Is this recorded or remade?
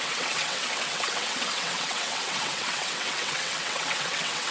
remade